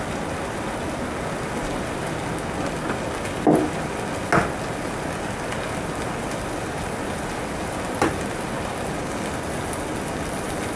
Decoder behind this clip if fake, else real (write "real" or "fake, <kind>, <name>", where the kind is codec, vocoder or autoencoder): real